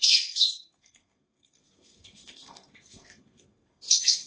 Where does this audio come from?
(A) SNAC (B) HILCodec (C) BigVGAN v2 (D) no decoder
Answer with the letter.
A